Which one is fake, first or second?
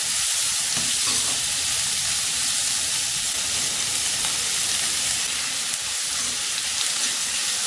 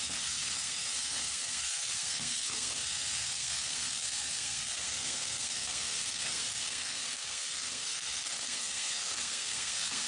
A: second